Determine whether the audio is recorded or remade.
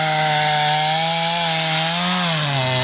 recorded